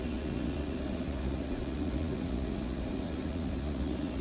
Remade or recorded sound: remade